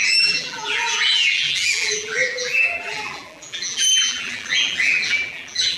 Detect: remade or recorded remade